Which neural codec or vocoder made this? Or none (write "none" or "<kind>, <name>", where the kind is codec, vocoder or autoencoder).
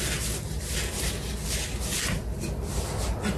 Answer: none